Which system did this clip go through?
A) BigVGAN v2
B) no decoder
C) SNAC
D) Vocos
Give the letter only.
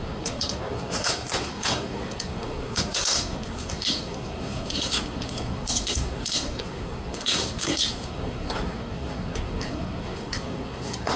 C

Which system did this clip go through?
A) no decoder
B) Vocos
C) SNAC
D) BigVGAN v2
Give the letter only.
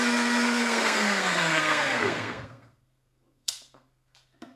C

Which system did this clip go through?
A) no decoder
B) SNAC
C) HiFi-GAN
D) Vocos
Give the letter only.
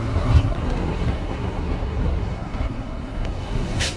B